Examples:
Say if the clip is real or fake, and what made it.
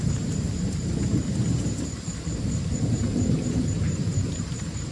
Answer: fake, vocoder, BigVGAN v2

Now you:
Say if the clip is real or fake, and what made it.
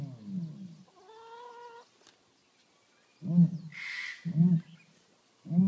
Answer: real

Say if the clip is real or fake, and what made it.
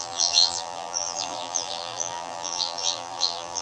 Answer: fake, vocoder, BigVGAN v2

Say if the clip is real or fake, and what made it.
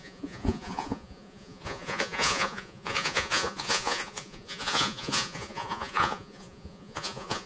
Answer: fake, vocoder, Vocos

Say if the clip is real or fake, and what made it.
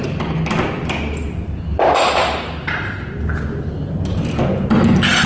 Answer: real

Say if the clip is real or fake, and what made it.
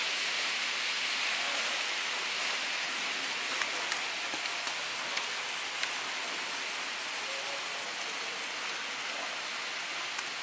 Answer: real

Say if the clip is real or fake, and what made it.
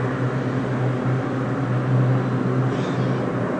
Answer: real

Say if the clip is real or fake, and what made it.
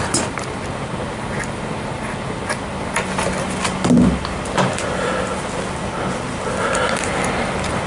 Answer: real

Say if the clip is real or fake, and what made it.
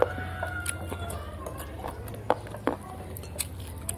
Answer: real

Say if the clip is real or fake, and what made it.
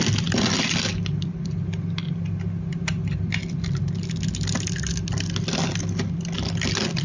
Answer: real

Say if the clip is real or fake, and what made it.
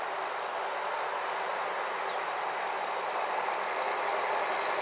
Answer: real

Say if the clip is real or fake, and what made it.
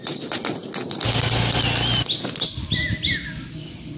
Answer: real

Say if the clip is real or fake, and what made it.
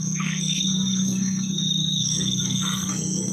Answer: fake, codec, SNAC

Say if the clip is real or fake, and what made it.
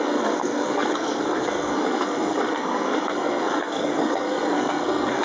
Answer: fake, codec, SNAC